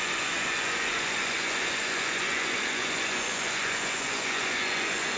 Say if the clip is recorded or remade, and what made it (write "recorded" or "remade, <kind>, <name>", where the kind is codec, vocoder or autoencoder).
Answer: remade, vocoder, Vocos